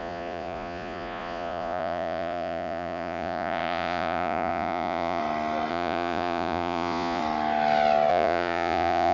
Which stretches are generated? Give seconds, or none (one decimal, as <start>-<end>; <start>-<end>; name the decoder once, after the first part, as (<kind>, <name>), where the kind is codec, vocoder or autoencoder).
0.0-5.2 (vocoder, Vocos); 5.7-7.2; 8.1-9.1